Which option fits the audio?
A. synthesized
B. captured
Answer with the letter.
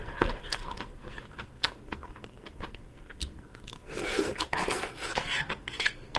A